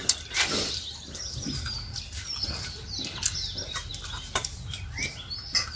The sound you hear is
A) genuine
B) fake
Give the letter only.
A